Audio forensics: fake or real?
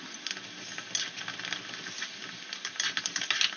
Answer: real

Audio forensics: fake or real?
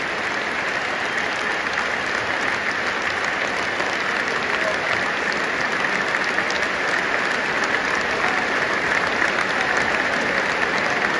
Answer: real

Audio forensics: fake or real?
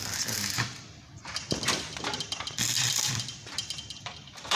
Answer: fake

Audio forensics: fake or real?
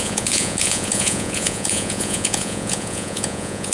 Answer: fake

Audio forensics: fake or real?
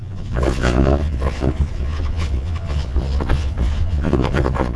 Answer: fake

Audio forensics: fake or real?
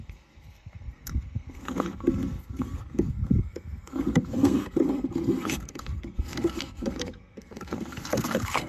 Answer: fake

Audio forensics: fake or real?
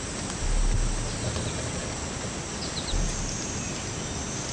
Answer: real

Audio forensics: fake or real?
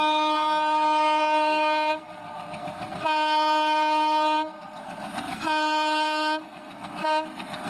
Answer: fake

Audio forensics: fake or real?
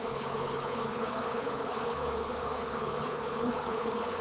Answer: fake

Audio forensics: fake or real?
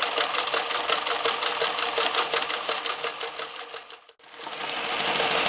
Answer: real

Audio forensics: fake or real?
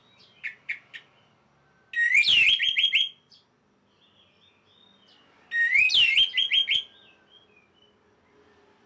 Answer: real